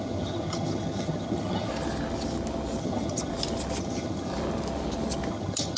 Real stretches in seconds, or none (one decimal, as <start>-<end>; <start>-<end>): 1.7-2.8; 3.3-3.8; 4.3-5.3